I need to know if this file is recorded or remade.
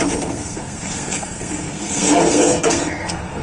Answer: remade